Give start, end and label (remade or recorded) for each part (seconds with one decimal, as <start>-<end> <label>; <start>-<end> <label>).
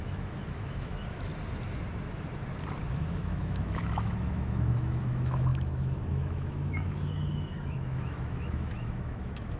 0.0-1.3 remade; 1.3-2.9 recorded; 2.9-9.6 remade